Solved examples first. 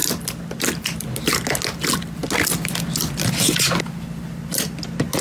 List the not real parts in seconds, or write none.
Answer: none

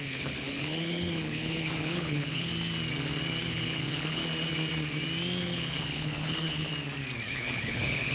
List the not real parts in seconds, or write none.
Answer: 0.0-2.5 (codec, HILCodec); 3.4-4.2; 5.4-6.7; 7.3-8.1